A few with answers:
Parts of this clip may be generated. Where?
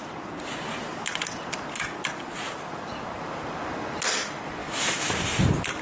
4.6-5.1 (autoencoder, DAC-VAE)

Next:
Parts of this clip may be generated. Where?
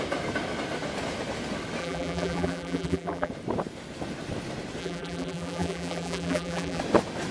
1.8-3.3 (vocoder, BigVGAN v2); 4.8-6.8